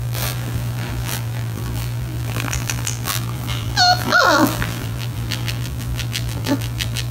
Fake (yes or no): yes